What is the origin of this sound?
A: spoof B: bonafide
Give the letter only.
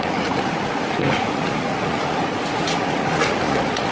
A